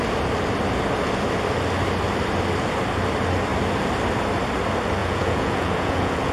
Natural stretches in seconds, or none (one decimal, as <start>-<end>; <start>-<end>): 0.0-5.0